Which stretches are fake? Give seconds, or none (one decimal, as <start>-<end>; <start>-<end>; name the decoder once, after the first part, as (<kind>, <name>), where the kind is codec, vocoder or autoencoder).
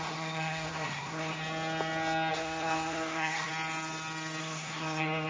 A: 0.0-1.4 (codec, SNAC); 2.3-3.5; 4.4-5.3